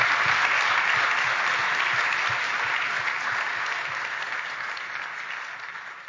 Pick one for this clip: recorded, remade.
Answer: recorded